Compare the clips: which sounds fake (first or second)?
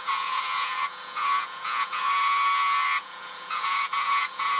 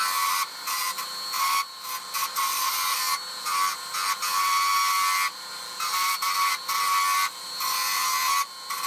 first